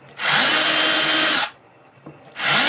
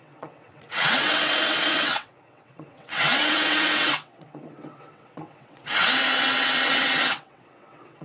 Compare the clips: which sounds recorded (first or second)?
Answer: first